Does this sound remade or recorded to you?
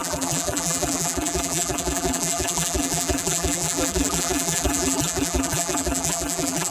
remade